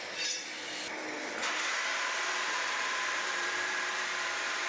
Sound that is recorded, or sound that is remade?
remade